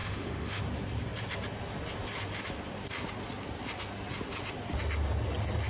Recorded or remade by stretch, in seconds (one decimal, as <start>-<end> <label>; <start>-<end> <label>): 0.0-0.6 remade; 0.6-5.7 recorded

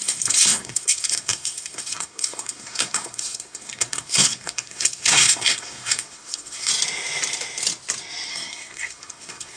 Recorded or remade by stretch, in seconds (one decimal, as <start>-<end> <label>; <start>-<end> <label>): 0.0-6.7 remade; 6.7-8.3 recorded; 8.3-9.6 remade

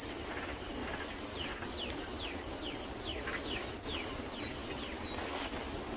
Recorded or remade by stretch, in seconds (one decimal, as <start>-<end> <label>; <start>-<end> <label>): 0.0-6.0 recorded